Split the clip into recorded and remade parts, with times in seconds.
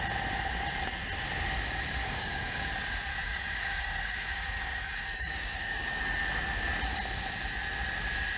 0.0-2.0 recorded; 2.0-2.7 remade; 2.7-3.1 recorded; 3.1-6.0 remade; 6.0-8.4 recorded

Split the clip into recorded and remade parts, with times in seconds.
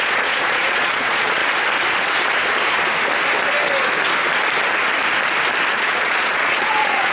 0.0-1.4 remade; 1.4-5.7 recorded; 5.7-7.1 remade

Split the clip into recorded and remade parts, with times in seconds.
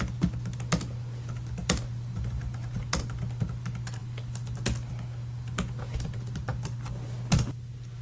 0.0-1.6 recorded; 1.6-2.8 remade; 2.8-8.0 recorded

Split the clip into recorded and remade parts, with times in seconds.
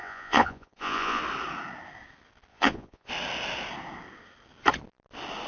0.0-1.2 remade; 1.2-2.5 recorded; 2.5-3.1 remade; 3.1-5.5 recorded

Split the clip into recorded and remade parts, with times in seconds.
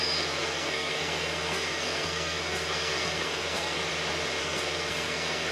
0.0-3.8 remade; 3.8-4.4 recorded; 4.4-5.5 remade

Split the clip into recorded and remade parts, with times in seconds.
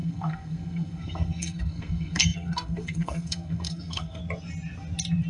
0.0-4.2 remade; 4.2-5.3 recorded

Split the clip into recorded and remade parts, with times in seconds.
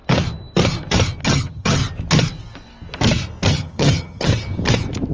0.0-1.2 recorded; 1.2-1.8 remade; 1.8-3.5 recorded; 3.5-4.3 remade; 4.3-5.1 recorded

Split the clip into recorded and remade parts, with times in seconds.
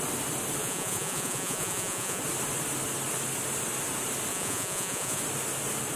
0.0-0.6 recorded; 0.6-2.2 remade; 2.2-4.3 recorded; 4.3-5.2 remade; 5.2-6.0 recorded